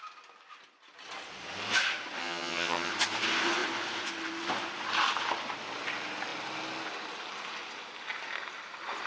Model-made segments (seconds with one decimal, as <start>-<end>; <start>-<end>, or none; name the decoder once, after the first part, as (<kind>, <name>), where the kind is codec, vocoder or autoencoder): 2.2-2.9 (vocoder, HiFi-GAN)